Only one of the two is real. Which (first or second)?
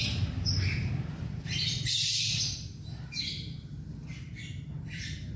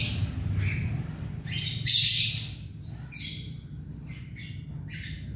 second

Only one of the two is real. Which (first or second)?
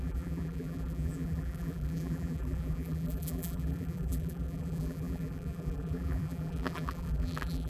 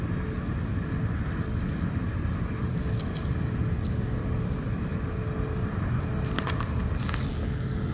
second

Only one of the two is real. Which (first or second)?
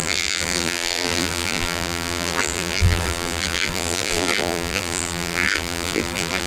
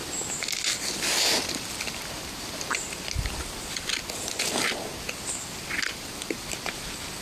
second